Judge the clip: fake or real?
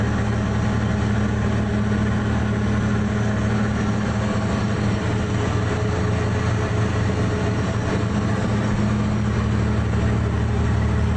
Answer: real